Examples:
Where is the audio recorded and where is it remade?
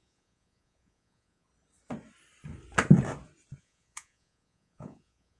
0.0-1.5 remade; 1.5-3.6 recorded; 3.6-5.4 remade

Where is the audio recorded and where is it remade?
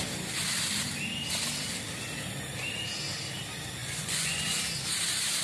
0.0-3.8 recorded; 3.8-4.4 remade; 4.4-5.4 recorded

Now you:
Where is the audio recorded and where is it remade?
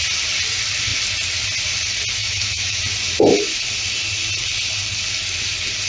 0.0-2.2 recorded; 2.2-2.8 remade; 2.8-5.9 recorded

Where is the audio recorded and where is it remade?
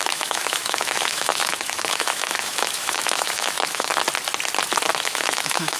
0.0-3.9 remade; 3.9-4.9 recorded; 4.9-5.8 remade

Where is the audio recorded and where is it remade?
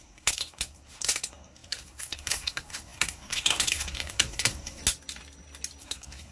0.0-4.8 remade; 4.8-5.8 recorded; 5.8-6.3 remade